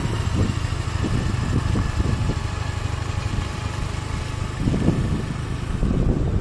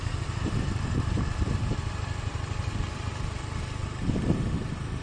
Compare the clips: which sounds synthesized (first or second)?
second